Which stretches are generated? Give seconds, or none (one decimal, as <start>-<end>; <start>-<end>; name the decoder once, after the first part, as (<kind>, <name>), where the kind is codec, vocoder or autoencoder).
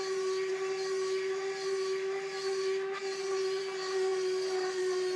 none